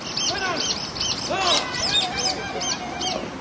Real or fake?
real